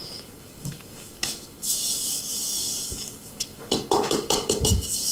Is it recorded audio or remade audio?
remade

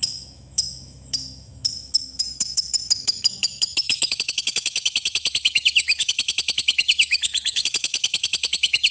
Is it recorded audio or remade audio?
remade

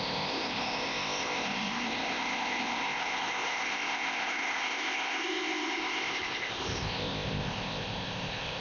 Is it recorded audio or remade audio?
remade